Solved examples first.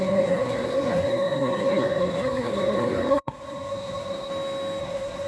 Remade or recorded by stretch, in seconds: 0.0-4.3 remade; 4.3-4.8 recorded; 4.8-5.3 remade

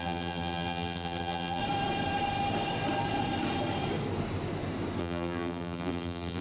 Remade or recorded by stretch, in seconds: 0.0-1.6 remade; 1.6-5.0 recorded; 5.0-6.4 remade

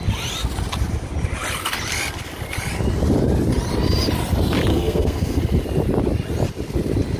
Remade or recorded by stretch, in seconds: 0.0-4.7 recorded; 4.7-5.4 remade; 5.4-7.2 recorded

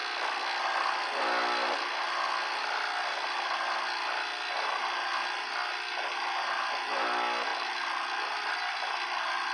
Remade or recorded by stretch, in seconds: 0.0-9.5 recorded